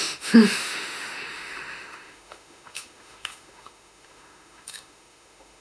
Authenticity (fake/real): fake